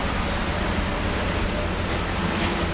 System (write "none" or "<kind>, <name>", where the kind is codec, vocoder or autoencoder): none